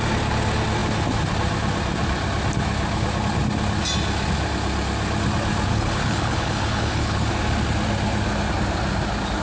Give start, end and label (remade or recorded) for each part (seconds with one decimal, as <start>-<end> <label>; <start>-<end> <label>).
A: 0.0-5.7 recorded; 5.7-7.3 remade; 7.3-9.4 recorded